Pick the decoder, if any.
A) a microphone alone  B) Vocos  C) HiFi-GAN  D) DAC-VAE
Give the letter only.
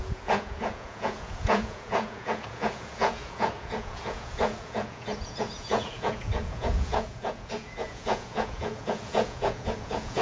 B